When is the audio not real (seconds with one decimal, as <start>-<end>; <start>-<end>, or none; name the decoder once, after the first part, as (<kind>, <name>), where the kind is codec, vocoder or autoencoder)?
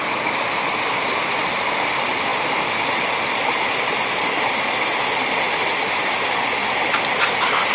none